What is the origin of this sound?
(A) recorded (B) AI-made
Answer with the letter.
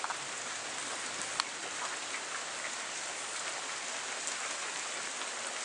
A